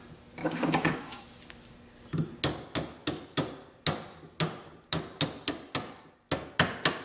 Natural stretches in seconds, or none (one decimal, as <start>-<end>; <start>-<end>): 0.0-0.4; 1.2-7.0